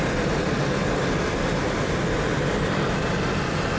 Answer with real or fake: real